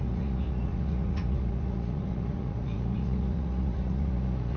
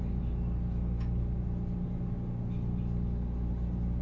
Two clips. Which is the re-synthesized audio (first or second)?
first